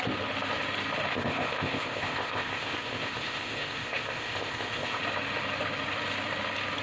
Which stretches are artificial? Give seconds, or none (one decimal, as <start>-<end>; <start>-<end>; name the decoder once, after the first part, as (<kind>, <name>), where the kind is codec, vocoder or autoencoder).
1.1-5.0 (codec, ZipCodec)